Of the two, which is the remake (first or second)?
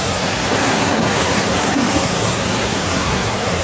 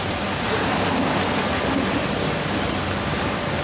first